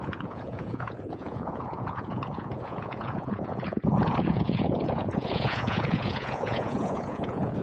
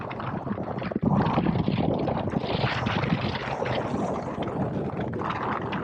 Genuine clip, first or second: second